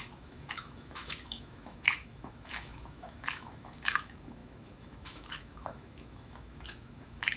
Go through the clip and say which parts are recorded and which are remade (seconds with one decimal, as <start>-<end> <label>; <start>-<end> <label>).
0.0-7.4 remade